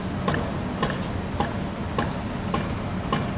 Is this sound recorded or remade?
recorded